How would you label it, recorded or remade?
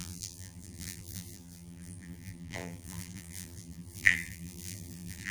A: remade